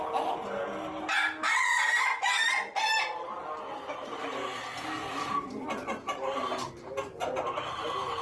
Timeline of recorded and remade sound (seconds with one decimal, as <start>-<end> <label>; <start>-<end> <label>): 0.0-5.0 recorded; 5.0-6.7 remade; 6.7-8.2 recorded